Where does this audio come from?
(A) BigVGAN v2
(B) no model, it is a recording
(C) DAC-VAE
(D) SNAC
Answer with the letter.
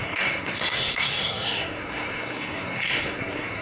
D